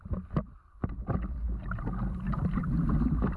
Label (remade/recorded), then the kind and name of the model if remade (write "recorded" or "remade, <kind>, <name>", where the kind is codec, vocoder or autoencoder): recorded